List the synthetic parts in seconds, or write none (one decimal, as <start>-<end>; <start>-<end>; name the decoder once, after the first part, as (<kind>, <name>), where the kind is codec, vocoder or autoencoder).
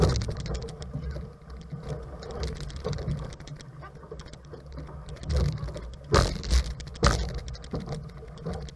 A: none